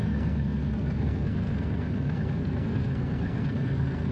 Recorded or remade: remade